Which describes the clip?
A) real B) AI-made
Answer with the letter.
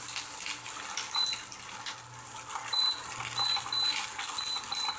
A